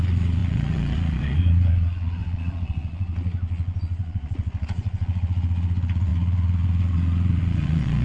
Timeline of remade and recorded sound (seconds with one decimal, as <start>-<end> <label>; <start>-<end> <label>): 0.0-8.0 remade

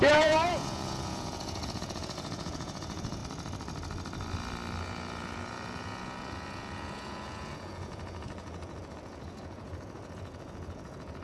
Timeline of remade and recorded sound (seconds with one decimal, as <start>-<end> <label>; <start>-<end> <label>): 0.0-3.2 remade; 3.2-4.8 recorded; 4.8-11.2 remade

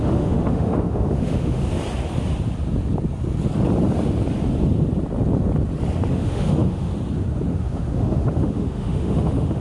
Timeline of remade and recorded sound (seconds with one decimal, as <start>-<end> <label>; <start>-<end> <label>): 0.0-1.6 remade; 1.6-6.1 recorded; 6.1-6.9 remade; 6.9-7.5 recorded; 7.5-9.6 remade

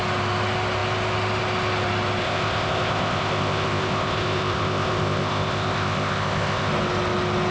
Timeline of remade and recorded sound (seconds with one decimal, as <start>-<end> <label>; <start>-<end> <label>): 0.0-2.2 recorded; 2.2-6.7 remade; 6.7-7.5 recorded